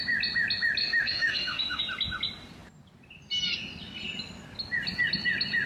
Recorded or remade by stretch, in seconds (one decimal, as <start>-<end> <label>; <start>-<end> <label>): 0.0-0.8 recorded; 0.8-1.8 remade; 1.8-5.7 recorded